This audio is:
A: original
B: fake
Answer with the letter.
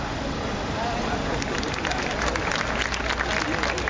A